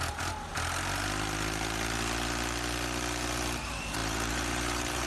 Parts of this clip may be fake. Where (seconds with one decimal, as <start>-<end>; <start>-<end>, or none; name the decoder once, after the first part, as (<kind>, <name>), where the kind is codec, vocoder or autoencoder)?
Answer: 0.0-0.5 (vocoder, BigVGAN v2); 3.6-5.1